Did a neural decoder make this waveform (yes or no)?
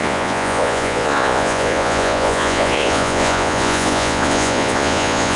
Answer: yes